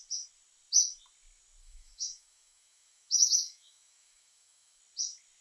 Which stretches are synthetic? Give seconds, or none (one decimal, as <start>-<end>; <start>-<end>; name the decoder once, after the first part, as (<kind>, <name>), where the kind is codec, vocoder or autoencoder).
1.6-4.8 (autoencoder, DAC-VAE)